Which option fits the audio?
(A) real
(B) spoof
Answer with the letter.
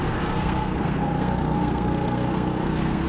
B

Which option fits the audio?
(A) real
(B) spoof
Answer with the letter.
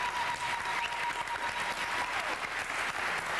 A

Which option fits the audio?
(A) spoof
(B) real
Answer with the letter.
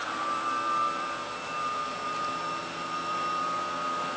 A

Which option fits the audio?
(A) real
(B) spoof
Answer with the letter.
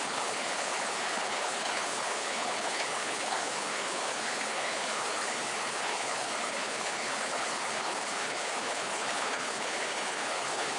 B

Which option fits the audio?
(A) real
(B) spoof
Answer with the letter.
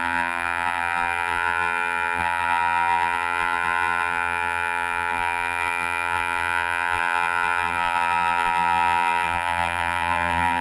B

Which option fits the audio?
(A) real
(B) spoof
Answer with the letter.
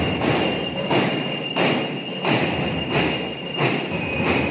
A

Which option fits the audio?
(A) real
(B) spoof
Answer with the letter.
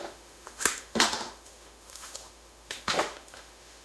B